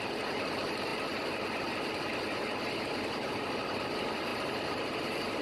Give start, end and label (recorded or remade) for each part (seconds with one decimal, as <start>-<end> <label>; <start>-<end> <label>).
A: 0.0-5.4 recorded

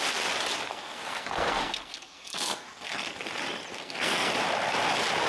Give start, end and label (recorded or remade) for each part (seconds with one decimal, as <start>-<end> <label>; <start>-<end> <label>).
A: 0.0-0.7 recorded; 0.7-3.1 remade; 3.1-3.7 recorded; 3.7-4.3 remade; 4.3-5.3 recorded

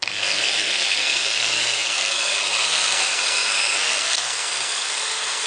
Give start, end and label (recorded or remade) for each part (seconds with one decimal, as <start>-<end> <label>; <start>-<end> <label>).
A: 0.0-5.5 remade

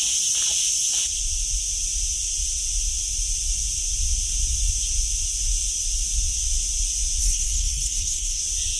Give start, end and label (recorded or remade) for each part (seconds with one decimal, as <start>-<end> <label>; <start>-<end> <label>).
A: 0.0-7.2 recorded; 7.2-8.4 remade; 8.4-8.8 recorded

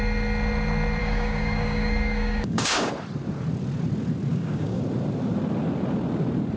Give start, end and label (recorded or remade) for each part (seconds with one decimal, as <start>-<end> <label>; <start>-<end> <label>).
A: 0.0-1.0 recorded; 1.0-2.9 remade; 2.9-4.3 recorded; 4.3-4.8 remade; 4.8-6.6 recorded